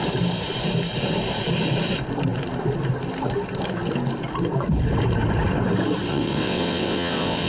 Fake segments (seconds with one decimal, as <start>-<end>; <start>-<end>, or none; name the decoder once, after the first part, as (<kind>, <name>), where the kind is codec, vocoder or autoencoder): 6.1-7.5 (vocoder, WaveNeXt)